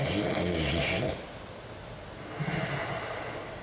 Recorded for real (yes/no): yes